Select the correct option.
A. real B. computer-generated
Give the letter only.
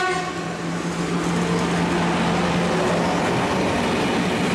A